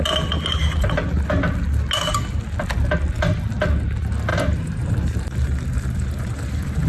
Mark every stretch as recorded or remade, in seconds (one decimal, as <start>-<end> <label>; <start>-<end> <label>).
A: 0.0-4.3 recorded; 4.3-6.9 remade